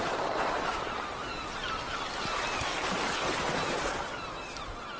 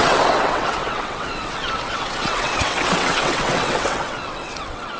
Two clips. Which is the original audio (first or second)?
first